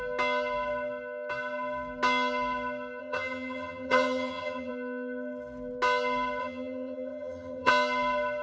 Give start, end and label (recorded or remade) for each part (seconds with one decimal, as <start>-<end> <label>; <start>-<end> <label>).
0.0-3.0 recorded; 3.0-4.7 remade; 4.7-6.4 recorded; 6.4-7.7 remade; 7.7-8.4 recorded